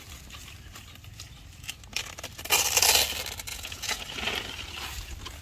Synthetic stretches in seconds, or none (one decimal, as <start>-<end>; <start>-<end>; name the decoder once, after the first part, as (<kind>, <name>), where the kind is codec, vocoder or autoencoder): 3.5-4.0 (vocoder, Vocos)